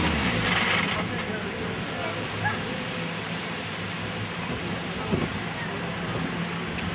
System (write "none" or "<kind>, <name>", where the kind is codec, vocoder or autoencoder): none